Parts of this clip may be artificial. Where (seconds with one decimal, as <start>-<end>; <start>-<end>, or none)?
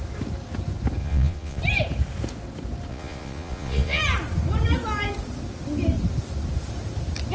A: 1.0-1.6; 2.9-4.0